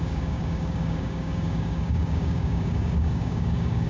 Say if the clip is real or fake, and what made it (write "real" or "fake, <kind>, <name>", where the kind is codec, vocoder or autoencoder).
fake, codec, DAC